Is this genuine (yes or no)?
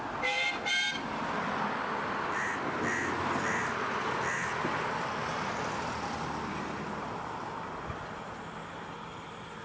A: yes